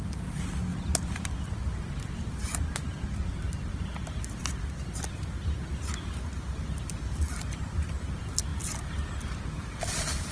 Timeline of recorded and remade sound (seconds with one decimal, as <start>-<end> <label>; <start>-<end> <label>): 0.0-8.5 recorded; 8.5-10.3 remade

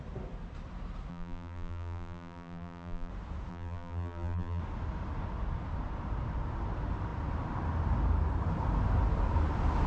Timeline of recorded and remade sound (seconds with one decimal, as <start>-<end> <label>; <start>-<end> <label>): 0.0-1.1 recorded; 1.1-3.1 remade; 3.1-3.5 recorded; 3.5-4.6 remade; 4.6-9.9 recorded